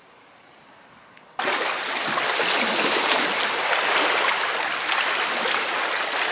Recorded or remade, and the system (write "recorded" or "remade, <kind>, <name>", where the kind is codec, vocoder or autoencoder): recorded